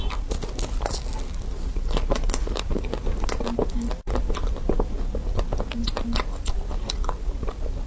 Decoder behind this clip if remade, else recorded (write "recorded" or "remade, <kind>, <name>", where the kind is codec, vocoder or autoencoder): recorded